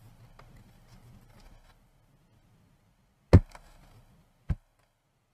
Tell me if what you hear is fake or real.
real